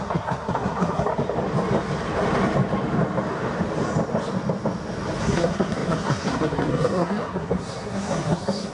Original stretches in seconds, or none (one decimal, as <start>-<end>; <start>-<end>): 1.1-5.2